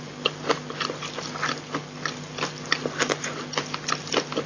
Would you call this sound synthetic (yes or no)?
no